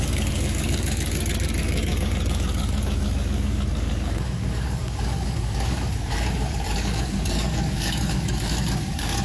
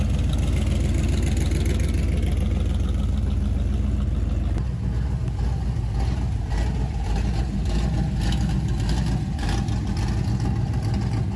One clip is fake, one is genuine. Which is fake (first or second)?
first